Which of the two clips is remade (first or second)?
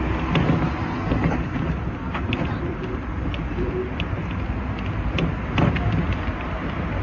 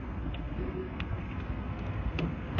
second